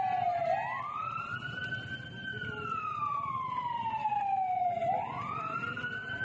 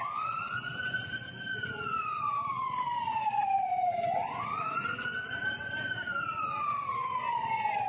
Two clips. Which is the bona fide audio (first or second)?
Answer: first